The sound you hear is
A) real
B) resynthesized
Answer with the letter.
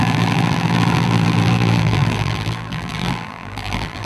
B